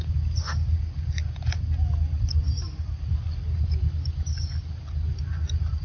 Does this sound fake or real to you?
real